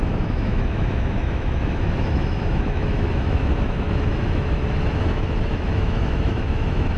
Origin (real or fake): fake